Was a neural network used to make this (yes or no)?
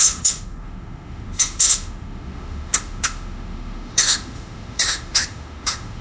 yes